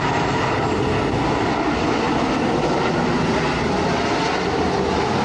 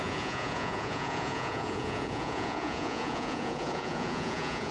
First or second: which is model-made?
second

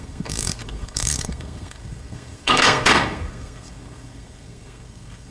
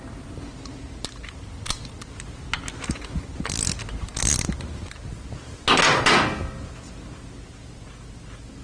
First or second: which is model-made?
first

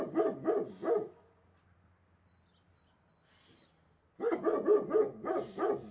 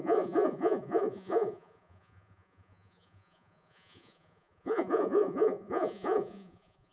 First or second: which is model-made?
second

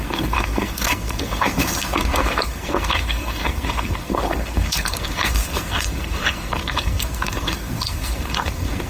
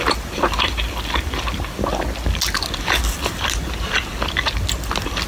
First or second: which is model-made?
first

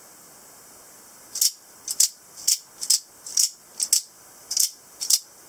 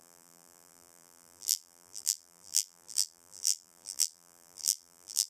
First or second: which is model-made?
second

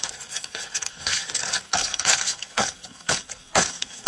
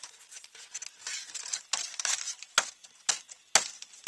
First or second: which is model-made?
first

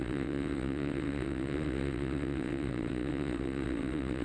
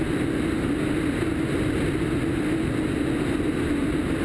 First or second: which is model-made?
first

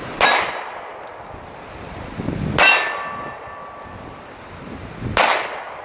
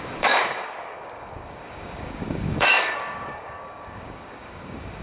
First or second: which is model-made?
second